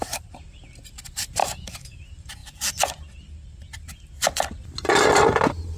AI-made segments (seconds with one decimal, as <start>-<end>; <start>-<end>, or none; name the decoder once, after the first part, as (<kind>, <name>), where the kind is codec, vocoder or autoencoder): 1.4-2.0 (autoencoder, DAC-VAE)

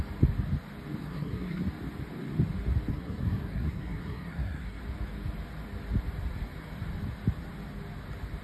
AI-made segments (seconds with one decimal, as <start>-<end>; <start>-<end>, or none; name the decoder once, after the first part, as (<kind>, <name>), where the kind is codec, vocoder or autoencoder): 1.0-1.6 (codec, SNAC); 2.9-4.8

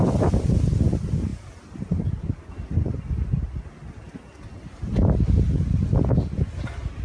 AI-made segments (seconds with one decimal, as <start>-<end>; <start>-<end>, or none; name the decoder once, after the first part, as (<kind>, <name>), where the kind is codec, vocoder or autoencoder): none

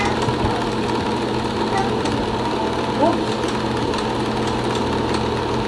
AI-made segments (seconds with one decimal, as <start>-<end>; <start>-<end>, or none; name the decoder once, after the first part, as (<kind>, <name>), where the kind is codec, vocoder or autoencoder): none

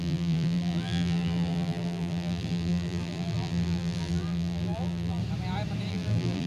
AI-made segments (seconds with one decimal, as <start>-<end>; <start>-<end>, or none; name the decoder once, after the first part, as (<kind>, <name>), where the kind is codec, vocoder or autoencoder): 0.0-5.2 (vocoder, BigVGAN v2); 5.9-6.5

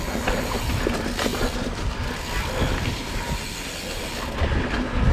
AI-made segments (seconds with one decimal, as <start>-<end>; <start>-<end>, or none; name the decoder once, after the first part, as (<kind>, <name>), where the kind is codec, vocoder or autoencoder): none

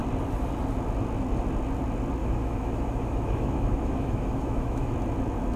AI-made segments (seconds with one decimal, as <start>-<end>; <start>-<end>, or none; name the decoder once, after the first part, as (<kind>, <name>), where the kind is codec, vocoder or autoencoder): 2.2-4.9 (autoencoder, DAC-VAE)

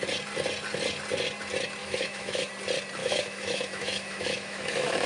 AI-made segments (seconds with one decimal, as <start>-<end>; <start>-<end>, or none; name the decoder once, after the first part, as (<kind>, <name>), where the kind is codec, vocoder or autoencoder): 1.8-2.5 (autoencoder, DAC-VAE); 3.0-5.1